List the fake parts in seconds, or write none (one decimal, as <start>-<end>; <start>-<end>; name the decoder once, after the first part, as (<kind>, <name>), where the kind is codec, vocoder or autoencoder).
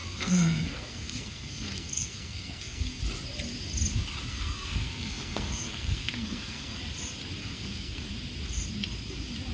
0.0-3.0 (codec, SNAC); 4.3-6.8; 7.4-8.0